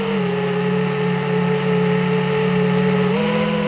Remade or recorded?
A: recorded